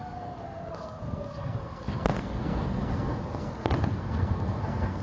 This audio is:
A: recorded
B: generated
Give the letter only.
B